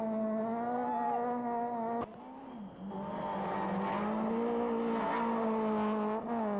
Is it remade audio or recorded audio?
recorded